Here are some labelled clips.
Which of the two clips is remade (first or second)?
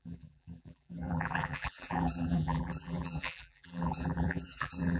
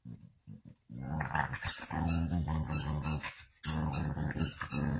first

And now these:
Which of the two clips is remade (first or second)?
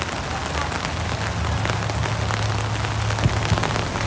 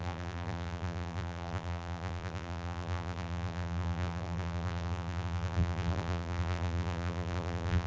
second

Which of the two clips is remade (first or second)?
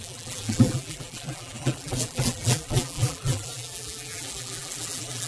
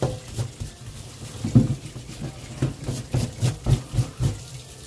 first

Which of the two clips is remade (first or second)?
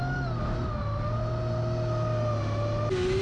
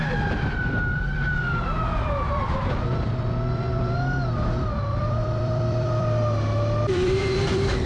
second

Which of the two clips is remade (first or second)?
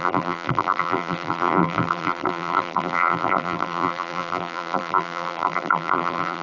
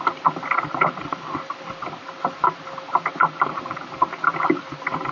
first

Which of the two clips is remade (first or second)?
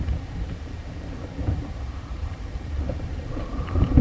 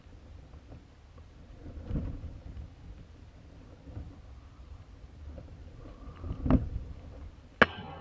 first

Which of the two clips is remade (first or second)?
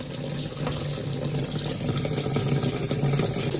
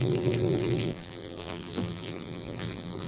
second